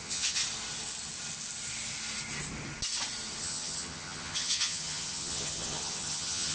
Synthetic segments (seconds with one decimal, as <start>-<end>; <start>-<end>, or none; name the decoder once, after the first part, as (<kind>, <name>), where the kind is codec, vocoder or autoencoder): 0.0-0.4 (vocoder, HiFi-GAN); 3.4-6.5